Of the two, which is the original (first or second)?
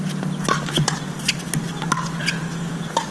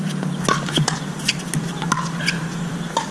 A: first